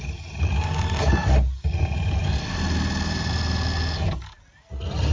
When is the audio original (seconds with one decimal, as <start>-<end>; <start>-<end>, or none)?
0.0-5.1